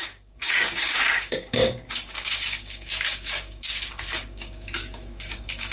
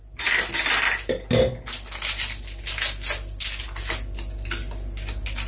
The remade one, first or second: first